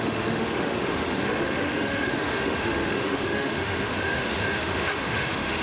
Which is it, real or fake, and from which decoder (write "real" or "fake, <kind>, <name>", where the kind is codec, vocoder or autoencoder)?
fake, autoencoder, DAC-VAE